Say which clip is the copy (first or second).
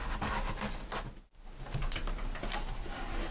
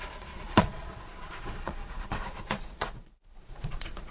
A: second